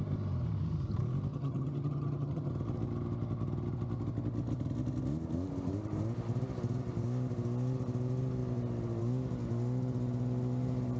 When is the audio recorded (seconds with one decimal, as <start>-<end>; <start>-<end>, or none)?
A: 0.0-1.3; 2.5-11.0